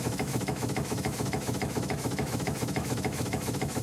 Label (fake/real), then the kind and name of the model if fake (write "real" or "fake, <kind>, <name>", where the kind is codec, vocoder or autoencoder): fake, autoencoder, DAC-VAE